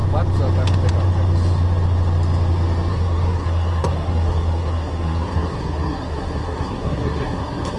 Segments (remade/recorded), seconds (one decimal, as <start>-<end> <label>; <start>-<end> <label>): 0.0-2.9 recorded; 2.9-7.8 remade